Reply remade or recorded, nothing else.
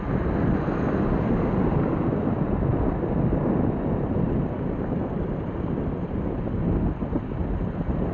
recorded